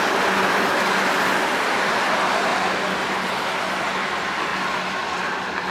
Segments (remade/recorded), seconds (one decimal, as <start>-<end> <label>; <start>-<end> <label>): 0.0-5.7 recorded

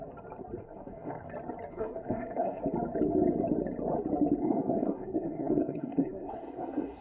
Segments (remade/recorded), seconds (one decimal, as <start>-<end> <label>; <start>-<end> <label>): 0.0-0.6 recorded; 0.6-1.2 remade; 1.2-1.7 recorded; 1.7-2.6 remade; 2.6-4.4 recorded; 4.4-7.0 remade

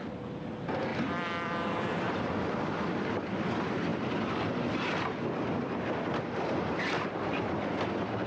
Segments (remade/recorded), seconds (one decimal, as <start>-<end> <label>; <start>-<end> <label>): 0.0-0.9 recorded; 0.9-3.0 remade; 3.0-3.9 recorded; 3.9-5.2 remade; 5.2-8.3 recorded

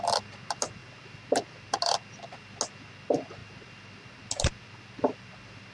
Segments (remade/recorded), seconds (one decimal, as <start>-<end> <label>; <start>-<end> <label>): 0.0-5.7 recorded

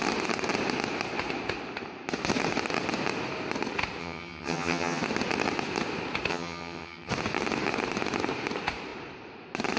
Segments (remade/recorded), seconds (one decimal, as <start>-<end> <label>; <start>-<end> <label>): 0.0-4.0 recorded; 4.0-5.0 remade; 5.0-6.3 recorded; 6.3-7.1 remade; 7.1-9.8 recorded

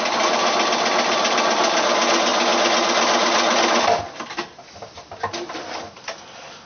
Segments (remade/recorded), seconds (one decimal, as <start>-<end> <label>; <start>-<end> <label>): 0.0-6.7 recorded